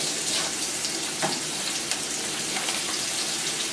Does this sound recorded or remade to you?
remade